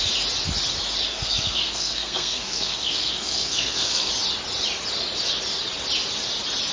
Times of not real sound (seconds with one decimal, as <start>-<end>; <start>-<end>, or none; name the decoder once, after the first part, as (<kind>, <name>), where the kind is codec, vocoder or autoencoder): 1.1-4.1 (codec, SNAC)